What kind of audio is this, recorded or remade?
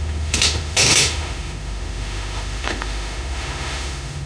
remade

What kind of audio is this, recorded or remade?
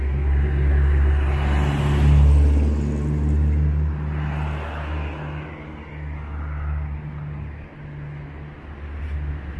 recorded